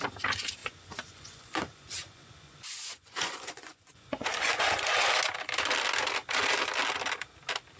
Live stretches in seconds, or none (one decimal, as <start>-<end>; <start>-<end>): 0.0-0.6; 5.2-7.8